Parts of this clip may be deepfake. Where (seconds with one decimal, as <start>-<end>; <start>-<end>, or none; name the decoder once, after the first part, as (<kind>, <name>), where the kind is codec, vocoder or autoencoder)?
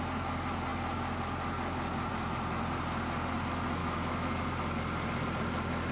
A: 3.8-4.4 (autoencoder, DAC-VAE)